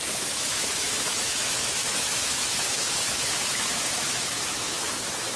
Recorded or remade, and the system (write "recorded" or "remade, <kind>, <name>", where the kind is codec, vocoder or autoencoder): remade, autoencoder, DAC-VAE